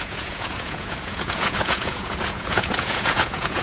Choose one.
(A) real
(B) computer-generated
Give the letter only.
B